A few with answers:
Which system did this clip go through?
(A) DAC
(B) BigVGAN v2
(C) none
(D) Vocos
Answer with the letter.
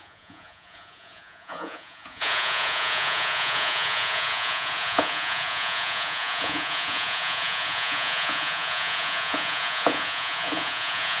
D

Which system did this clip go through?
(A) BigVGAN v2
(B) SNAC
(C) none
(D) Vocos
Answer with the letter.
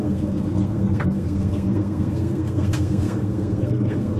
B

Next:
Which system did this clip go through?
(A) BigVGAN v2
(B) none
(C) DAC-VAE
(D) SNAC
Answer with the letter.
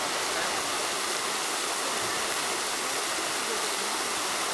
B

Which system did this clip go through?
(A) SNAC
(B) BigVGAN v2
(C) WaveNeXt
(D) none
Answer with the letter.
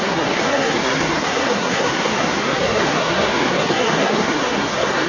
A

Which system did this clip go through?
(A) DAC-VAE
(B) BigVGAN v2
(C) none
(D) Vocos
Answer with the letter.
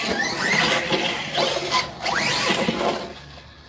C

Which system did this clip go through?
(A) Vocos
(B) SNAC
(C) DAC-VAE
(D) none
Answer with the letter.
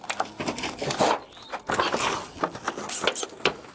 D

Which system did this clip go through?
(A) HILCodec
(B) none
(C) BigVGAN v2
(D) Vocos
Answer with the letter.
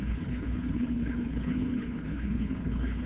A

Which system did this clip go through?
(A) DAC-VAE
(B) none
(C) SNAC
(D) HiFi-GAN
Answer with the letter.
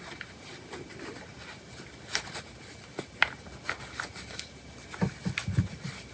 B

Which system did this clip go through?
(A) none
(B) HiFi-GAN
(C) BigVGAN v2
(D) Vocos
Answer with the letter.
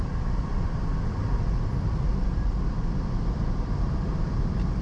C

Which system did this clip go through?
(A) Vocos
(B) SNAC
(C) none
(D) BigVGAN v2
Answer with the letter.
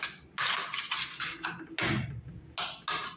C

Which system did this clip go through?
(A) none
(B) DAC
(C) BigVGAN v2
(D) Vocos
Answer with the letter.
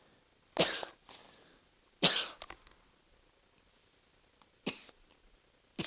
A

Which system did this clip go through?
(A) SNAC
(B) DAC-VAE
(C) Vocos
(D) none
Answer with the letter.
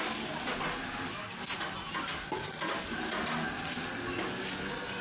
D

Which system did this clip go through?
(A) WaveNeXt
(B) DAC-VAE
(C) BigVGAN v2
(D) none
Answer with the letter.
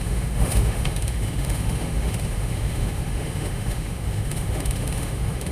B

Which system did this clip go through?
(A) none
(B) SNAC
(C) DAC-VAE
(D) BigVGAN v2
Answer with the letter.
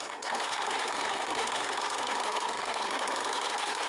B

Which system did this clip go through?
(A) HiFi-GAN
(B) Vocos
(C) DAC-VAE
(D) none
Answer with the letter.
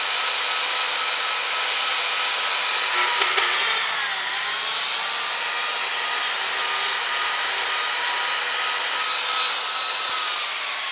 D